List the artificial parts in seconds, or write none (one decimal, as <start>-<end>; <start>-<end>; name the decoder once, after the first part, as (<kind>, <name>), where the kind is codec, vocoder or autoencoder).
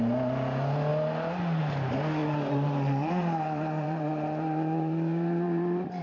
2.2-6.0 (vocoder, BigVGAN v2)